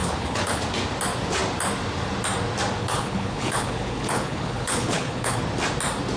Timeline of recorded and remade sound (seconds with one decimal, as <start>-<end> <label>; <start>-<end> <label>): 0.0-0.6 remade; 0.6-2.8 recorded; 2.8-5.4 remade; 5.4-6.2 recorded